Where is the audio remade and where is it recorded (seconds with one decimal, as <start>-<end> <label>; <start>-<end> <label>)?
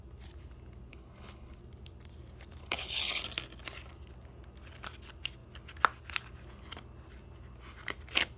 0.0-0.9 recorded; 0.9-1.6 remade; 1.6-2.6 recorded; 2.6-3.2 remade; 3.2-8.4 recorded